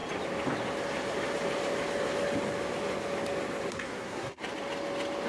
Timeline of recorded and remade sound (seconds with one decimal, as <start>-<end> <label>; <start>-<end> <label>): 0.0-3.7 recorded; 3.7-4.4 remade; 4.4-5.3 recorded